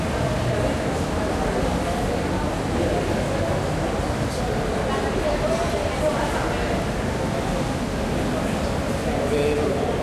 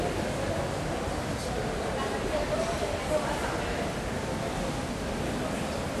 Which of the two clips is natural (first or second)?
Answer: first